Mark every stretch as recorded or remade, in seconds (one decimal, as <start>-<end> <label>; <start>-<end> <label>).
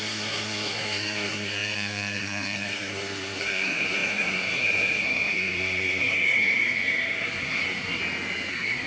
0.0-8.0 remade; 8.0-8.5 recorded; 8.5-8.9 remade